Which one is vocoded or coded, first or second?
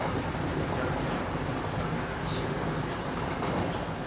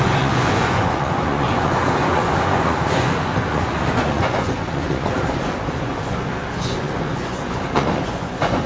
second